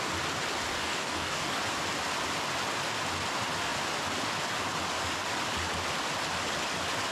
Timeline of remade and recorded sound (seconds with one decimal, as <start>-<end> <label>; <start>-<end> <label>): 0.0-0.7 recorded; 0.7-1.6 remade; 1.6-7.1 recorded